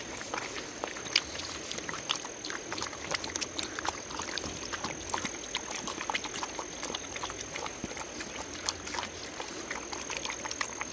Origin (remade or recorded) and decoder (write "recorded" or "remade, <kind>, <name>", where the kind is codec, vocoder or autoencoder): recorded